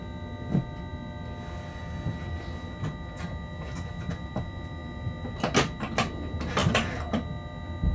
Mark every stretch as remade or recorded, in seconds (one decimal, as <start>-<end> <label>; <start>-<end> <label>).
0.0-7.9 recorded